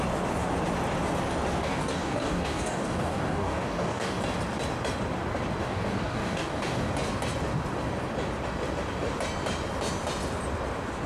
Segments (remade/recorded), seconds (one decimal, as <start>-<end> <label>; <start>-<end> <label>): 0.0-1.6 recorded; 1.6-4.2 remade; 4.2-5.6 recorded; 5.6-6.9 remade; 6.9-11.1 recorded